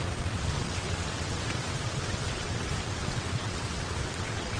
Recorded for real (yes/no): no